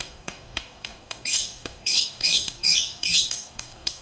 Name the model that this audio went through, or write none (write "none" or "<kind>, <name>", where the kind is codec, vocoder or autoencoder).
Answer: codec, DAC